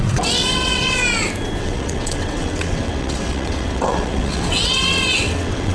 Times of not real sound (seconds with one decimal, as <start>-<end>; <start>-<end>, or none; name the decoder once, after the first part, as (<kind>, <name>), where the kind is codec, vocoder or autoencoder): 0.0-1.0 (vocoder, WaveNeXt); 1.6-5.7